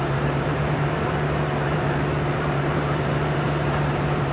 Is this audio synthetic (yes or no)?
yes